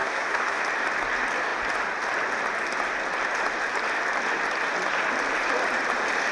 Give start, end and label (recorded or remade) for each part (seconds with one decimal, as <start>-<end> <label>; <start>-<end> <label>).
0.0-0.6 remade; 0.6-6.3 recorded